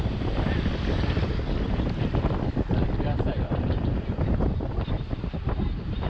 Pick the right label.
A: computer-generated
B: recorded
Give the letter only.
B